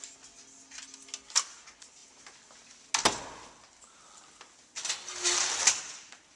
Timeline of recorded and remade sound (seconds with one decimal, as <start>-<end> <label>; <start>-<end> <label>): 0.0-6.4 recorded